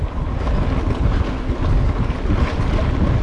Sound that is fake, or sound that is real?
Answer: real